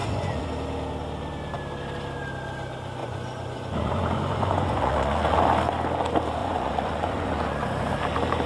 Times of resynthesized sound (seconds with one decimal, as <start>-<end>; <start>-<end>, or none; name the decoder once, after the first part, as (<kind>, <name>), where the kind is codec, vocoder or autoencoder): 0.0-0.5 (vocoder, Vocos); 3.0-5.4; 6.4-7.9